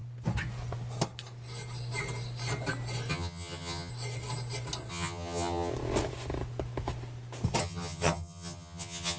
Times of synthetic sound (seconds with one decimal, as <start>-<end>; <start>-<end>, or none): 3.1-3.9; 4.9-5.7; 7.6-9.2